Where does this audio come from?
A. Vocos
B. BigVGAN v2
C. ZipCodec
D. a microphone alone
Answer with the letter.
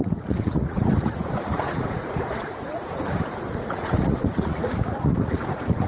A